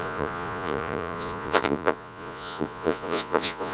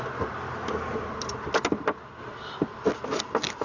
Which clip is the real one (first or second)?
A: second